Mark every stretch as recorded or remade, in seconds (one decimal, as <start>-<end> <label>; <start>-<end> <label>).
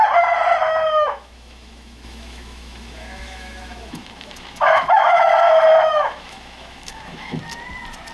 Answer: 0.0-0.6 recorded; 0.6-5.3 remade; 5.3-5.7 recorded; 5.7-7.4 remade; 7.4-8.1 recorded